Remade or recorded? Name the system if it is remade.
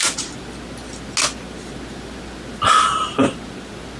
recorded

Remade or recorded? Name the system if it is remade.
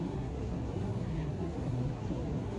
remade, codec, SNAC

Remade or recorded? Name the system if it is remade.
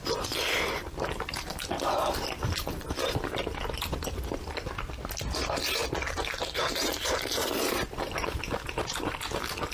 remade, vocoder, BigVGAN v2